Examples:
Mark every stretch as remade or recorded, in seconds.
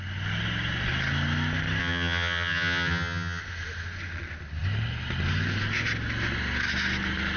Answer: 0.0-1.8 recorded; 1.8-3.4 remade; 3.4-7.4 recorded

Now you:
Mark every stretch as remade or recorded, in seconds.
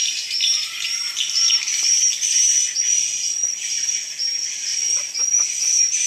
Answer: 0.0-3.7 recorded; 3.7-4.7 remade; 4.7-5.5 recorded; 5.5-6.1 remade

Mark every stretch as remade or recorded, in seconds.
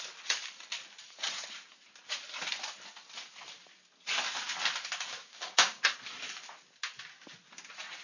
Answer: 0.0-5.2 recorded; 5.2-5.9 remade; 5.9-8.0 recorded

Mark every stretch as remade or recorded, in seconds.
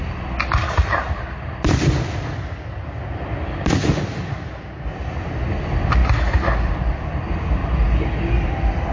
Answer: 0.0-8.9 recorded